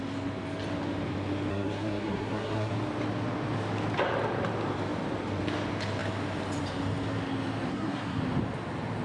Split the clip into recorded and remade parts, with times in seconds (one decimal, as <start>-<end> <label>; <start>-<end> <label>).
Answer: 0.0-1.5 recorded; 1.5-2.7 remade; 2.7-7.7 recorded; 7.7-8.2 remade; 8.2-9.0 recorded